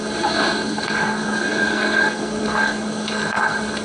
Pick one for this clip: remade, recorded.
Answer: remade